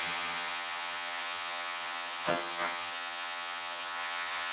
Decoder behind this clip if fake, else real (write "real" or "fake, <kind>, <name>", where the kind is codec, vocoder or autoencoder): fake, vocoder, HiFi-GAN